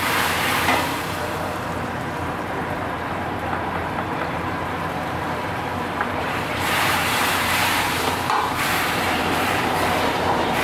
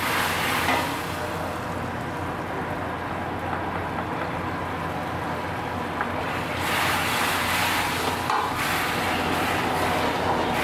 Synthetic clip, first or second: first